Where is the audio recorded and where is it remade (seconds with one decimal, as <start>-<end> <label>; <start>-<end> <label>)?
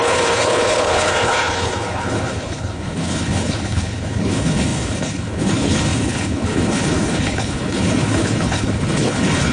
0.0-9.5 remade